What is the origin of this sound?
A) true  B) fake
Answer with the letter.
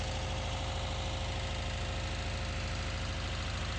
A